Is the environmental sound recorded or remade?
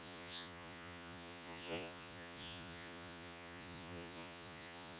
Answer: remade